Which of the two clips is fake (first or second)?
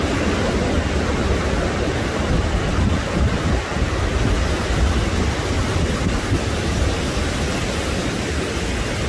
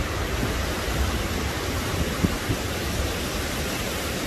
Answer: second